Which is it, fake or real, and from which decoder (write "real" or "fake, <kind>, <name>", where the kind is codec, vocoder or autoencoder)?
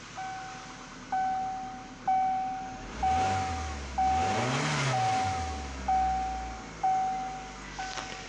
real